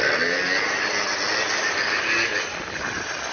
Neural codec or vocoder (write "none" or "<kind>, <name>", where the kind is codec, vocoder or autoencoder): none